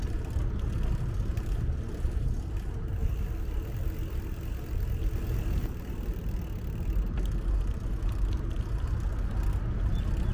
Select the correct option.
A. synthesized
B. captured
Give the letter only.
B